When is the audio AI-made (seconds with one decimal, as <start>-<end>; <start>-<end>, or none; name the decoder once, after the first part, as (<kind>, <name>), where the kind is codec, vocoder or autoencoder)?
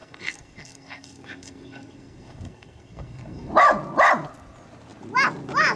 0.0-3.5 (codec, SNAC)